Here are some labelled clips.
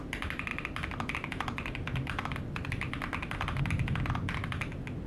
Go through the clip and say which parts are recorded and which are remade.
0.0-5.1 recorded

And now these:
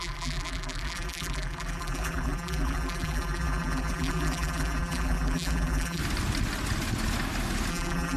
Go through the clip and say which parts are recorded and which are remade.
0.0-6.0 remade; 6.0-7.7 recorded; 7.7-8.2 remade

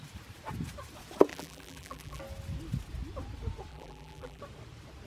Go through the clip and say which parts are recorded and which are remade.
0.0-1.3 recorded; 1.3-2.2 remade; 2.2-3.7 recorded; 3.7-4.4 remade; 4.4-5.1 recorded

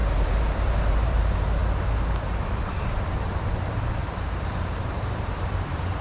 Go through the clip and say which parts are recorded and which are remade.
0.0-1.2 remade; 1.2-4.0 recorded; 4.0-6.0 remade